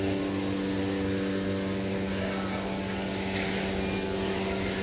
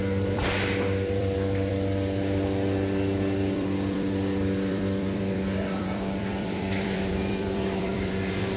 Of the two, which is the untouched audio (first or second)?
first